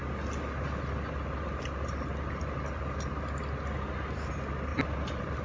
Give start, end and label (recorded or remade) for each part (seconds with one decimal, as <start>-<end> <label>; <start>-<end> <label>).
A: 0.0-4.7 recorded; 4.7-5.4 remade